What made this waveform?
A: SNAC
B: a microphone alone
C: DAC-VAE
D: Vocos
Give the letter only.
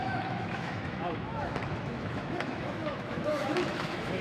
C